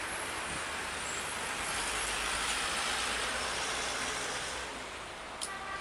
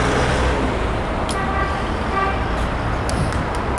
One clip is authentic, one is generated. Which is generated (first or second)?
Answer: first